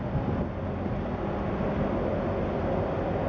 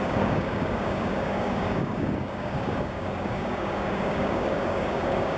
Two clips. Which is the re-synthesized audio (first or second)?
second